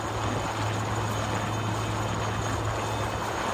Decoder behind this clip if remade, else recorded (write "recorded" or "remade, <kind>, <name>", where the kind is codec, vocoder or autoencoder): recorded